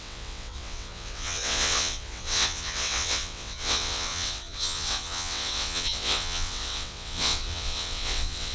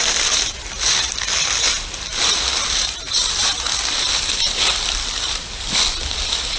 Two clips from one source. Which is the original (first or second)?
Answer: second